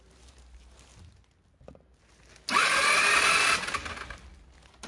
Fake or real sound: real